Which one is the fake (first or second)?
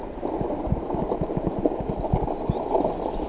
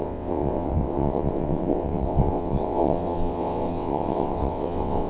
second